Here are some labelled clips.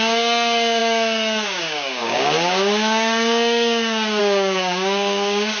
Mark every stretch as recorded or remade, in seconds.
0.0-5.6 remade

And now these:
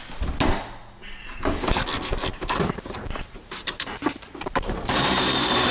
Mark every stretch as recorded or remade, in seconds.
0.0-2.3 recorded; 2.3-5.7 remade

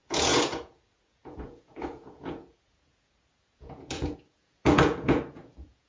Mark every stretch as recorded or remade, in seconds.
0.0-5.9 remade

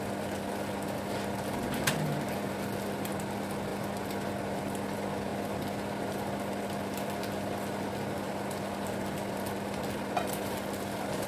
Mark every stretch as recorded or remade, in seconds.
0.0-11.3 recorded

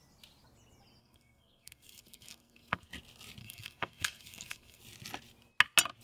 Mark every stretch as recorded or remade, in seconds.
0.0-1.0 recorded; 1.0-2.9 remade; 2.9-3.4 recorded; 3.4-4.8 remade; 4.8-6.0 recorded

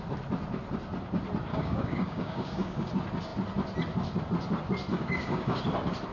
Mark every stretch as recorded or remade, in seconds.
0.0-1.5 recorded; 1.5-2.9 remade; 2.9-4.9 recorded; 4.9-5.6 remade; 5.6-6.1 recorded

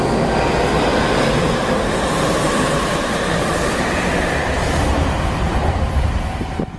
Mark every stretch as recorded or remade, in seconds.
0.0-0.9 recorded; 0.9-5.0 remade; 5.0-6.8 recorded

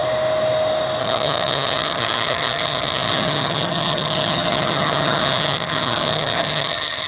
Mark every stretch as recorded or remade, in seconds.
0.0-1.0 recorded; 1.0-7.1 remade